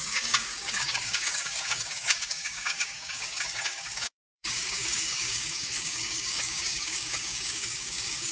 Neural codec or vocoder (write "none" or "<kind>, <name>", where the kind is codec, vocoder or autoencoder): codec, DAC